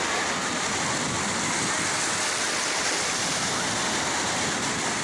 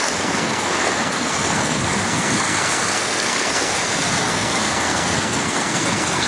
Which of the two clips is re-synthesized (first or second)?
second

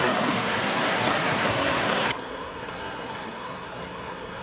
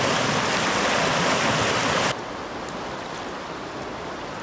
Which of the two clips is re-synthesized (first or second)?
first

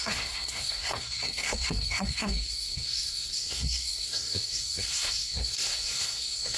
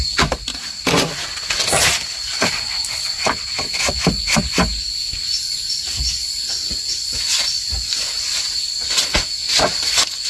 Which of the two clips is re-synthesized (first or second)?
first